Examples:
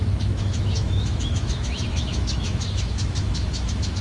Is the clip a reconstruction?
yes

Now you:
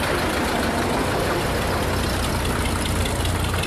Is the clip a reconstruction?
no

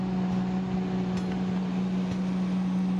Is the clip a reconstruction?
no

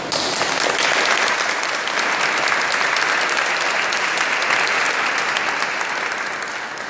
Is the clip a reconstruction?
no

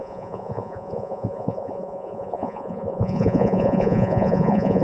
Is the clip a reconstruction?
yes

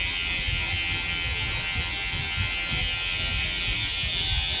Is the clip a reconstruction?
no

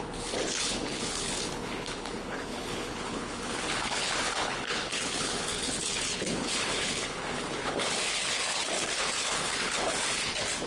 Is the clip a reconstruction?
yes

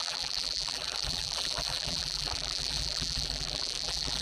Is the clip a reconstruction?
yes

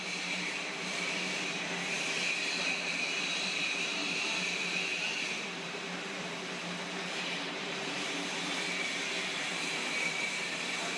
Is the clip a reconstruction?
yes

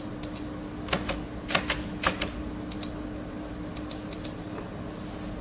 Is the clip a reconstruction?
yes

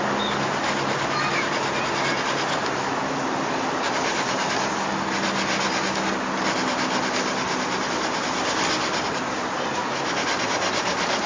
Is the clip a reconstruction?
no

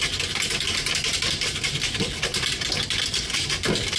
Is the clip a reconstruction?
no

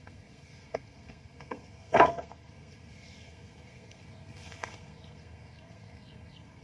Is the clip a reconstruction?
yes